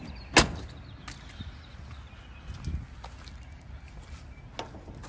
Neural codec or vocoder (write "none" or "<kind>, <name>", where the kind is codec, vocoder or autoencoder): none